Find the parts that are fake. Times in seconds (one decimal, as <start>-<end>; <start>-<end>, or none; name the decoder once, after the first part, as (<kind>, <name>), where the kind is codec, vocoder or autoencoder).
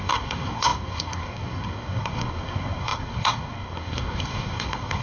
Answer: 0.0-5.0 (codec, SNAC)